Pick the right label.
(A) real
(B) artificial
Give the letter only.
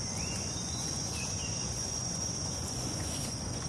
B